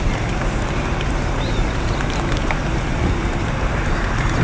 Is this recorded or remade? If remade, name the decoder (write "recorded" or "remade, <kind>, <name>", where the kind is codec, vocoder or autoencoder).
remade, vocoder, BigVGAN v2